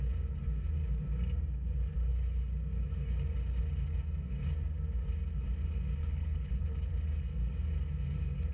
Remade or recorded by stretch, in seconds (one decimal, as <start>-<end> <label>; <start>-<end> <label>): 0.0-6.0 recorded; 6.0-6.9 remade; 6.9-8.5 recorded